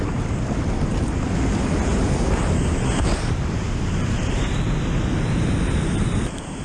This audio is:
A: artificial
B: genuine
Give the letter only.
B